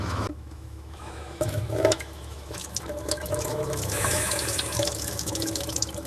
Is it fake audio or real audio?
fake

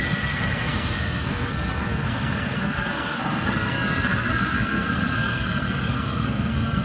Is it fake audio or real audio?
fake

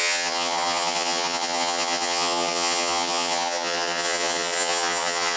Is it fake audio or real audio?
fake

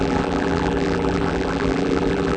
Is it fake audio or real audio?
fake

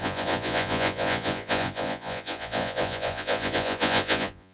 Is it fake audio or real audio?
fake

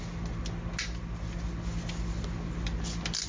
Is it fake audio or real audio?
real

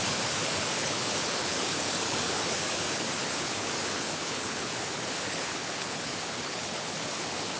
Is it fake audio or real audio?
fake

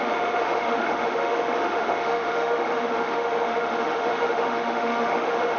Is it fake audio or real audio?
fake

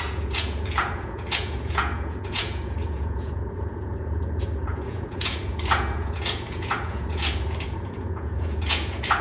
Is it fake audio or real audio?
fake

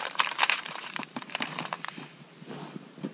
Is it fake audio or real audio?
fake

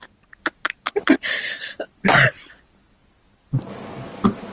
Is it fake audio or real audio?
real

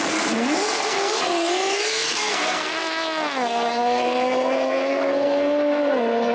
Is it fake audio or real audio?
fake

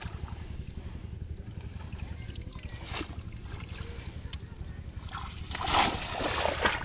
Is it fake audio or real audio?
real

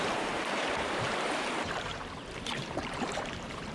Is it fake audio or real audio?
fake